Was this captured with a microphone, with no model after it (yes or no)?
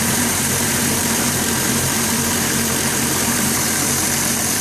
no